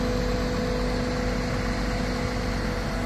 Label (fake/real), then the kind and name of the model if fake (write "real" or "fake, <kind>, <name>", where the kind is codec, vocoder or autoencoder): real